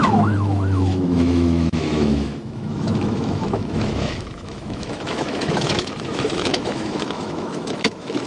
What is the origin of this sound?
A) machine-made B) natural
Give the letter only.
A